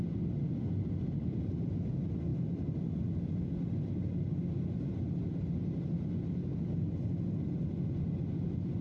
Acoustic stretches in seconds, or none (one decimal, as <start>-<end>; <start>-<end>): 0.0-8.8